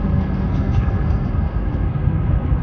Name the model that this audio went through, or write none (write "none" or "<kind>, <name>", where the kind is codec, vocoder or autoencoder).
codec, SNAC